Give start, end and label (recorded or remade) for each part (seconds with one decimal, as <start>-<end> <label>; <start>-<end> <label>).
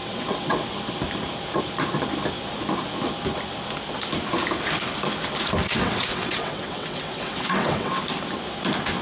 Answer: 0.0-0.7 remade; 0.7-5.6 recorded; 5.6-8.0 remade; 8.0-9.0 recorded